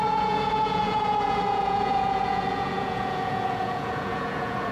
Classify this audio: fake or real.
fake